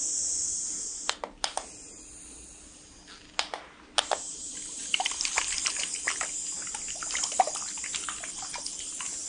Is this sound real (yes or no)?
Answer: yes